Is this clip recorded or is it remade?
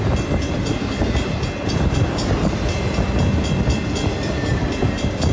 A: recorded